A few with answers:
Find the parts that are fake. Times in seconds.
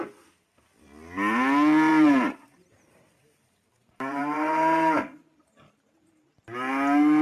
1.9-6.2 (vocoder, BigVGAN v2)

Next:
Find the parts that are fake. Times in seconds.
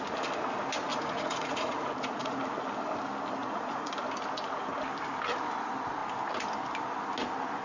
0.9-2.4 (vocoder, Vocos); 3.4-3.9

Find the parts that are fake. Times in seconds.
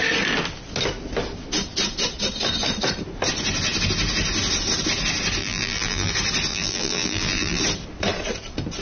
5.4-6.1 (vocoder, BigVGAN v2); 6.5-7.6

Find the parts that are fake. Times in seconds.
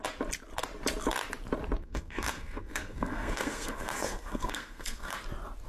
1.8-5.2 (codec, SNAC)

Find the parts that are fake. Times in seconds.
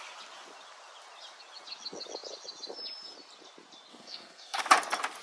3.9-4.6 (codec, SNAC)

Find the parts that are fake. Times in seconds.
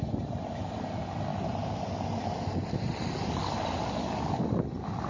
none